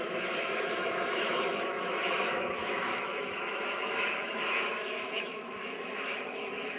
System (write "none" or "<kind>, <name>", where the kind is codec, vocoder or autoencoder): autoencoder, DAC-VAE